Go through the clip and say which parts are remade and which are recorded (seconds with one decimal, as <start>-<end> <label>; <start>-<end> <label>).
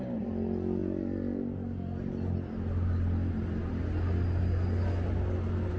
0.0-5.8 recorded